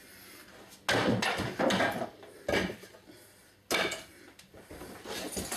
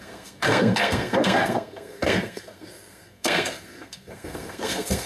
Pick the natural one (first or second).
first